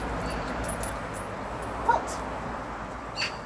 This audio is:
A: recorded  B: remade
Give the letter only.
A